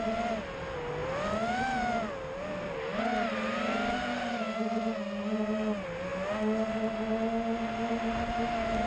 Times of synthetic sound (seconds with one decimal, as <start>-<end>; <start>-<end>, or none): none